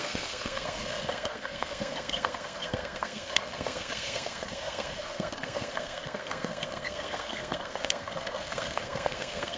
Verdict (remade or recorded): remade